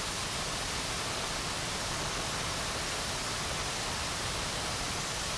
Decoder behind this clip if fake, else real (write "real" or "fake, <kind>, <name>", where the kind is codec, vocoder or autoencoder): real